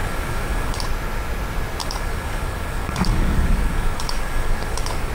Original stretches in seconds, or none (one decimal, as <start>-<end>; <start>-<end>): 0.8-1.8